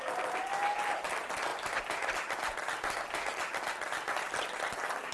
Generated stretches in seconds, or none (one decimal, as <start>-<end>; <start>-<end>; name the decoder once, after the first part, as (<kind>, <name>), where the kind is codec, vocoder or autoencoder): none